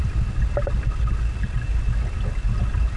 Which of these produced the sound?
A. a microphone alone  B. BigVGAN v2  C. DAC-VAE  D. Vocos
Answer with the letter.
A